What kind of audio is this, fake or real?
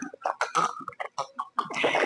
real